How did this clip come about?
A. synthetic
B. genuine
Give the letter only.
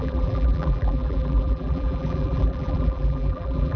A